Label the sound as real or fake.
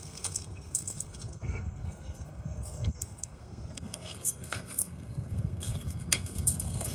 fake